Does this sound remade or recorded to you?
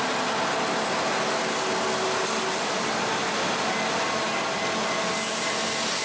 recorded